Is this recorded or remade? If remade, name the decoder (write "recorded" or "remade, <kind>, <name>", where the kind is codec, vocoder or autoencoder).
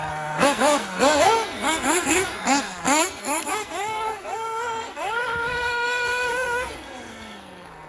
remade, codec, SNAC